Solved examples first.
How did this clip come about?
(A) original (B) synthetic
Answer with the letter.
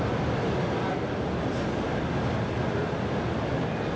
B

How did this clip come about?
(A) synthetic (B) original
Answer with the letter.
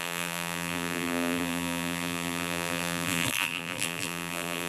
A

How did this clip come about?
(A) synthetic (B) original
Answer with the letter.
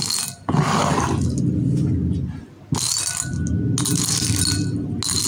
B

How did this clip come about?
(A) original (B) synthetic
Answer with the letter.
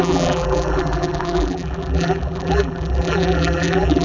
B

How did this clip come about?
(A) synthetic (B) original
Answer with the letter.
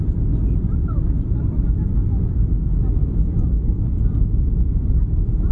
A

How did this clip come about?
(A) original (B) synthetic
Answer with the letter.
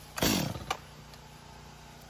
A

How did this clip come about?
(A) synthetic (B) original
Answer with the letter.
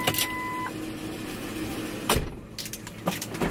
B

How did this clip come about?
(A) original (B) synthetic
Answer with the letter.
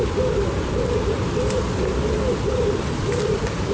B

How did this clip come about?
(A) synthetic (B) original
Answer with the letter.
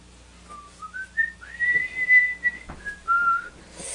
B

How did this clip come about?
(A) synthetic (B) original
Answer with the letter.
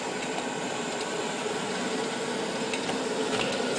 A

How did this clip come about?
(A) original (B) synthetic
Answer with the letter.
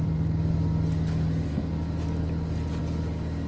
A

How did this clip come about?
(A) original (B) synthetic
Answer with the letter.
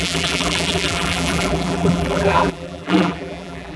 B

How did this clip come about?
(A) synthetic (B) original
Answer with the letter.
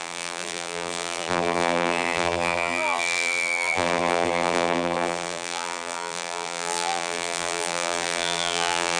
A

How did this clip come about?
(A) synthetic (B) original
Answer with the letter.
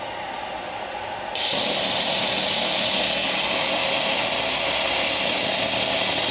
B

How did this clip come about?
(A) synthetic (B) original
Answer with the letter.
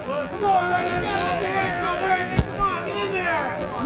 A